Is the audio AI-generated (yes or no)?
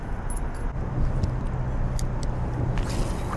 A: no